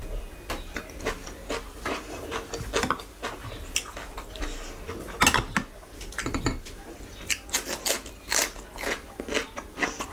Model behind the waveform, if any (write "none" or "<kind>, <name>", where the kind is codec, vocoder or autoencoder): none